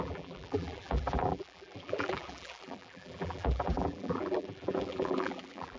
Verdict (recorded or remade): remade